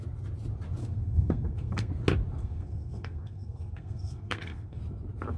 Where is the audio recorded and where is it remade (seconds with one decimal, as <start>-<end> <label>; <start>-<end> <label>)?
0.0-0.8 recorded; 0.8-1.9 remade; 1.9-2.4 recorded; 2.4-4.8 remade; 4.8-5.4 recorded